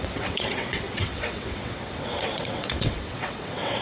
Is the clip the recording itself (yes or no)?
no